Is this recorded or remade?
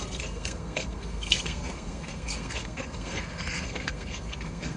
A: remade